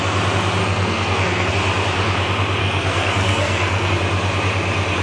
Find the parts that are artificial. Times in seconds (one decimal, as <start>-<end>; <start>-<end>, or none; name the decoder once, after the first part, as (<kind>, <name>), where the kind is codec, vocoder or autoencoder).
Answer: 0.6-1.5 (codec, SNAC); 2.6-3.9